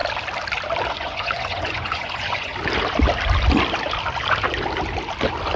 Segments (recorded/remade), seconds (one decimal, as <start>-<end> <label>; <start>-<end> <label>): 0.0-0.9 recorded; 0.9-2.5 remade; 2.5-5.6 recorded